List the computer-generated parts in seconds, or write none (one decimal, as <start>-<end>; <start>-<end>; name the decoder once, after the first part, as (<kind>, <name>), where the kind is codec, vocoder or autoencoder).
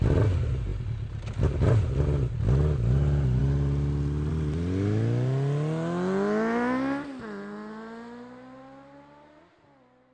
none